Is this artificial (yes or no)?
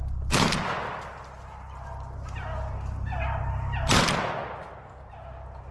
no